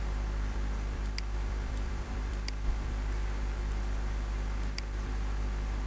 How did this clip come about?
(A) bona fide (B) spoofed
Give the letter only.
B